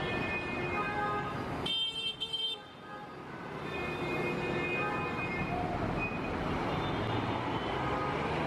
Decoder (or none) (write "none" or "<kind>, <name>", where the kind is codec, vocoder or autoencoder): none